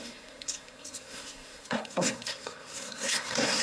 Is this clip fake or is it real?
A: fake